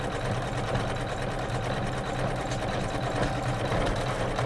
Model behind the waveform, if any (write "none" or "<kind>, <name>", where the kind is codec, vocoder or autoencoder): none